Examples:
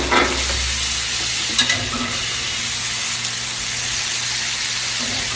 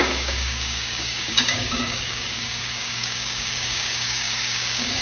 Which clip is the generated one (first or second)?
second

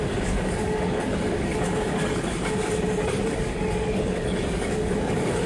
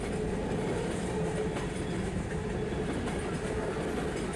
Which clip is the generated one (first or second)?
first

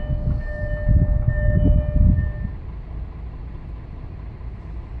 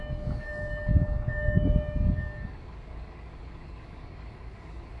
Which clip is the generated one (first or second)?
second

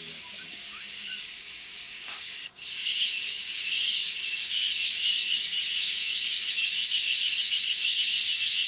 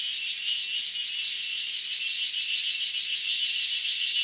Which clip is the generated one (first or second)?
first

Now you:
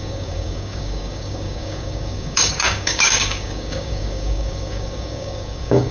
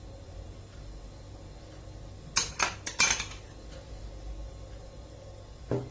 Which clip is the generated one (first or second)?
first